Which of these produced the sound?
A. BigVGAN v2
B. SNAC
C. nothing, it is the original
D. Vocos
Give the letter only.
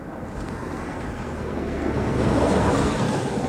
B